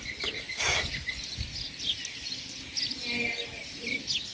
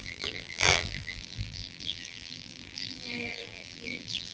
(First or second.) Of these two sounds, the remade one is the second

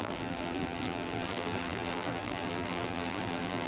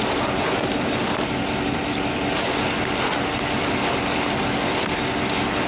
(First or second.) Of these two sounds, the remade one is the first